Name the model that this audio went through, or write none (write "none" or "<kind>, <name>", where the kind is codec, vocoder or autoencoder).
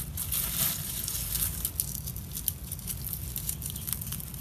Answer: none